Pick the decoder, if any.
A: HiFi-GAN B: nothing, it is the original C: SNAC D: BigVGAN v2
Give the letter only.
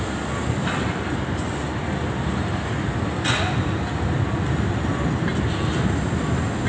B